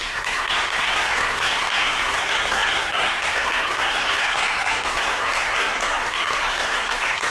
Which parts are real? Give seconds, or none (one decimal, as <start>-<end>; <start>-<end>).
none